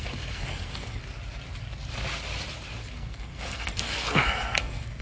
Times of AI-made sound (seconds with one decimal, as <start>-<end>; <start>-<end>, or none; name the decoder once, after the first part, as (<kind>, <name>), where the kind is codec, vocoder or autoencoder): 0.0-1.0 (codec, SNAC); 2.9-5.0